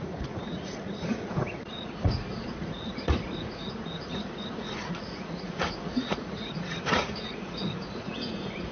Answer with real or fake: fake